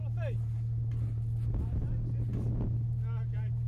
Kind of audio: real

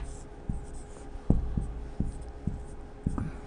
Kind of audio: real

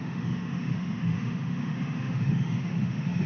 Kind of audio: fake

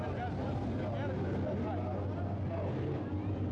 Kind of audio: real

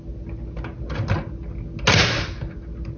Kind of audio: real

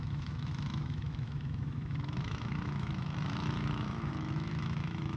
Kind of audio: fake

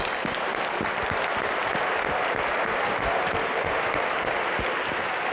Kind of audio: real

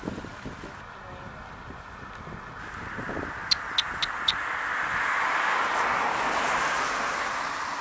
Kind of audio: real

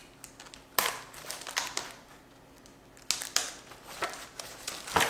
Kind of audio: real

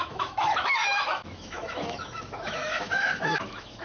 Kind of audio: fake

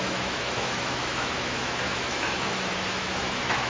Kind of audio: fake